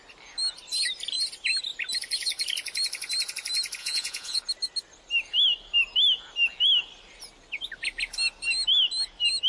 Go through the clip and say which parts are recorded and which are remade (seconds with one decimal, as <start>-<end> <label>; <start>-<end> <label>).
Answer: 0.0-3.8 recorded; 3.8-4.4 remade; 4.4-9.5 recorded